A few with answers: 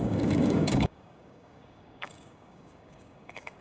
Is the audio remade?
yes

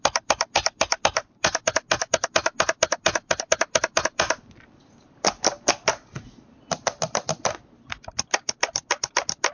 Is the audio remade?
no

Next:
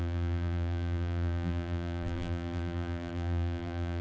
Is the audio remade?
yes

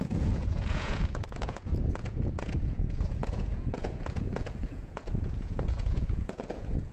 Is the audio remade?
yes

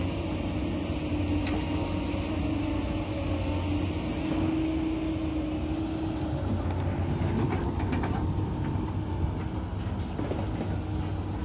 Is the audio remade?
no